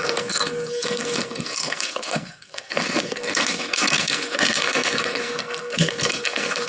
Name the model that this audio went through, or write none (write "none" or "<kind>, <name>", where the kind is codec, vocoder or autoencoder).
codec, SNAC